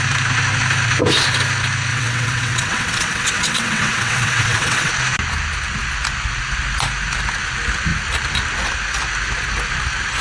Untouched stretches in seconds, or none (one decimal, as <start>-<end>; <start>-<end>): 0.0-1.9; 4.9-10.2